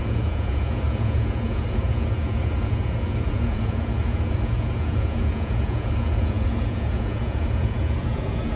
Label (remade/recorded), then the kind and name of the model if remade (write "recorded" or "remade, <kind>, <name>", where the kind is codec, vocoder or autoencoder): remade, vocoder, Vocos